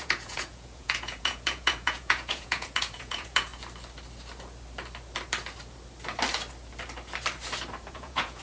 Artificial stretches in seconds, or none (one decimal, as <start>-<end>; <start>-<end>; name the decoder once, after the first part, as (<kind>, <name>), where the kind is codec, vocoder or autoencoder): 0.0-3.5 (vocoder, Vocos); 7.9-8.4